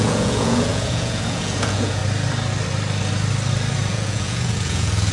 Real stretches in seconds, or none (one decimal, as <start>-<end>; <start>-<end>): 2.0-3.9